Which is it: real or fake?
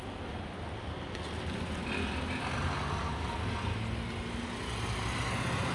real